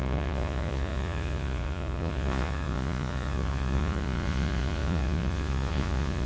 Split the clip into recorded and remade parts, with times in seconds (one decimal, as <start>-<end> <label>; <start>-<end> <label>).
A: 0.0-6.3 remade